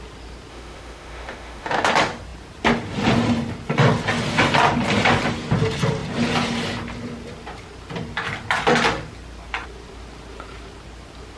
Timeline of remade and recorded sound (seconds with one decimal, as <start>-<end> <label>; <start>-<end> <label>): 0.0-0.5 recorded; 0.5-1.9 remade; 1.9-11.4 recorded